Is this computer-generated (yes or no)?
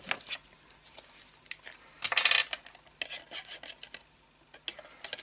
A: no